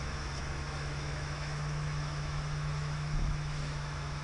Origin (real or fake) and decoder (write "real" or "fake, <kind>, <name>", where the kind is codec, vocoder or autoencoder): fake, autoencoder, DAC-VAE